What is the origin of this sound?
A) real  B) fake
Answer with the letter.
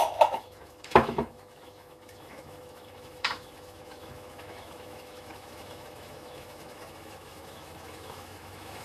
B